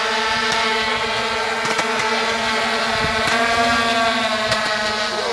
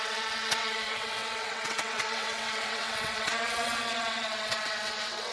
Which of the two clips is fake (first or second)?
second